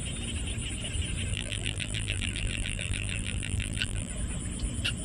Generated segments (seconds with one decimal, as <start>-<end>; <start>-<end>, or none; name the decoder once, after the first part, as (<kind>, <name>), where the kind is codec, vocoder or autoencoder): 1.3-4.1 (vocoder, BigVGAN v2)